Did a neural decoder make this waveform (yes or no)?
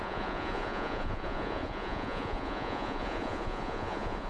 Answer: yes